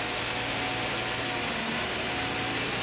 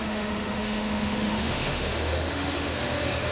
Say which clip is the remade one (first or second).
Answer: second